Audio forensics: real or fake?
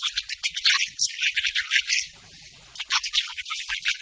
fake